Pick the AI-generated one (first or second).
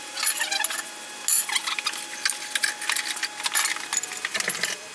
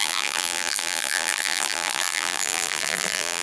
second